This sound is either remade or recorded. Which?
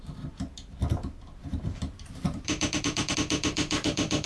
remade